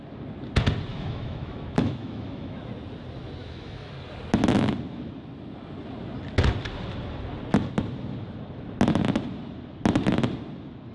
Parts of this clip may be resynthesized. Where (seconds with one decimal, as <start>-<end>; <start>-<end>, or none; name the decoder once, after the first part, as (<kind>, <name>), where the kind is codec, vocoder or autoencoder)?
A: 0.9-2.7 (autoencoder, DAC-VAE); 3.4-3.9